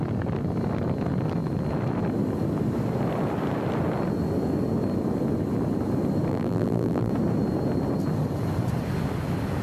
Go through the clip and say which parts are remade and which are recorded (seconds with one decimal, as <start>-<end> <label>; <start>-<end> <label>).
0.0-6.3 recorded; 6.3-7.1 remade; 7.1-9.6 recorded